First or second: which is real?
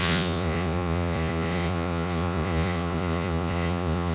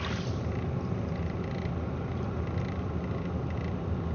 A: second